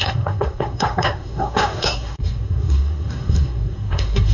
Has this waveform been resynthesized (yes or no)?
yes